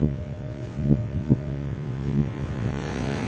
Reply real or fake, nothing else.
fake